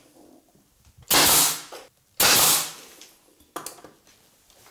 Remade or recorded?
recorded